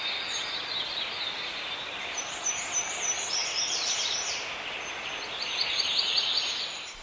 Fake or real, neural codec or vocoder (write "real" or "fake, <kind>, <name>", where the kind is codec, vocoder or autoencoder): real